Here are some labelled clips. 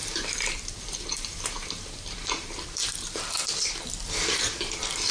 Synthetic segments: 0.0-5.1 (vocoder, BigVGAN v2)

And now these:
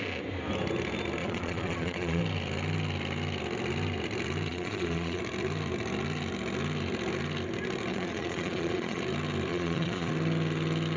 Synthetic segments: 1.2-2.2 (vocoder, Vocos); 4.5-5.2; 7.9-9.0; 9.5-10.1

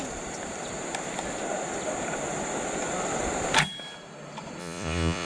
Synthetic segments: 4.6-5.3 (vocoder, Vocos)

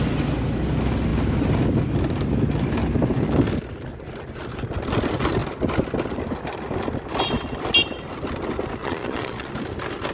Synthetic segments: 8.8-9.5 (vocoder, Vocos)

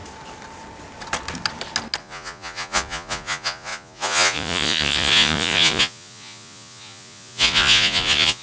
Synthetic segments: 2.0-8.4 (vocoder, Vocos)

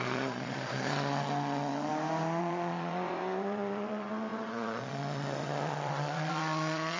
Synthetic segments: 0.0-1.9 (vocoder, Vocos); 2.4-7.0